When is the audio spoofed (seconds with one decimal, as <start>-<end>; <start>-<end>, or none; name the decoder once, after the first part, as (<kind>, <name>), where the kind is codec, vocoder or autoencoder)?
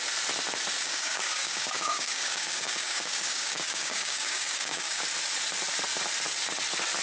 0.8-5.0 (codec, DAC)